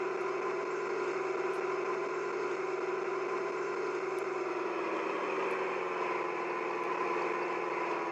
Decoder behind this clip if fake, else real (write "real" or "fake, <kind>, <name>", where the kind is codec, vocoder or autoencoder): real